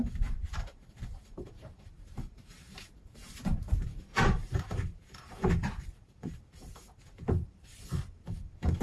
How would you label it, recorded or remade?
remade